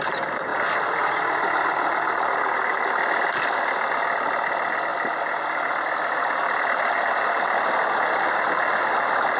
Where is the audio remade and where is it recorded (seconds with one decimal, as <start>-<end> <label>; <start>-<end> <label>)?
0.0-9.4 recorded